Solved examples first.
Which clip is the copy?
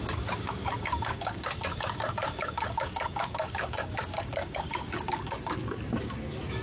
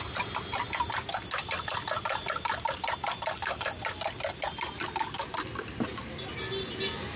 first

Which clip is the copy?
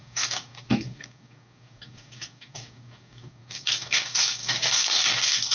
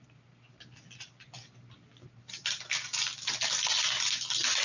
first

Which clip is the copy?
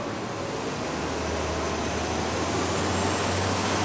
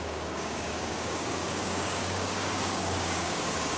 second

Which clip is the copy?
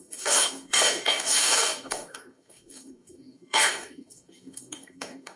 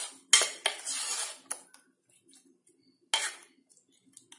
first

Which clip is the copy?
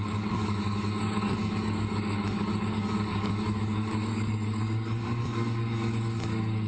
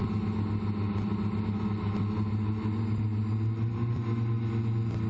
first